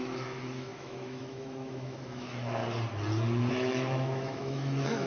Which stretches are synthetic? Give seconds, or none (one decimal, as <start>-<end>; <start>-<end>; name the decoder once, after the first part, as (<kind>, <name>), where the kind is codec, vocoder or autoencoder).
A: 0.0-2.6 (autoencoder, DAC-VAE); 3.5-5.1